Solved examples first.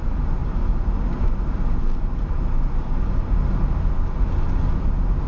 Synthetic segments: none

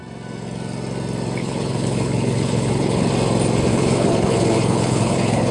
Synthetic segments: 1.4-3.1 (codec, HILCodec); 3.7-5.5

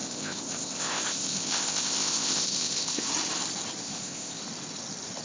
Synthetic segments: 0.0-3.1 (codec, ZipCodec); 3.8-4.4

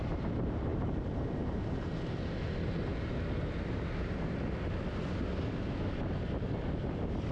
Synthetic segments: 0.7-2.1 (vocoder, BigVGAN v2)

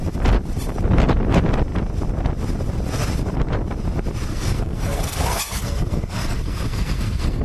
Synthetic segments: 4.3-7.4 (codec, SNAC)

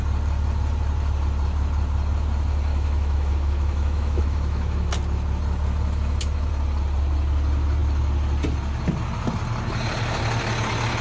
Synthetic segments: 2.7-4.9 (autoencoder, DAC-VAE)

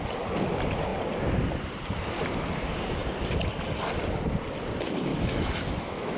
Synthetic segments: 5.1-6.2 (autoencoder, DAC-VAE)

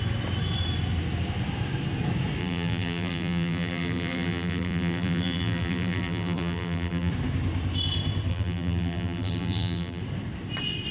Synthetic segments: 2.4-7.1 (vocoder, BigVGAN v2); 8.3-10.0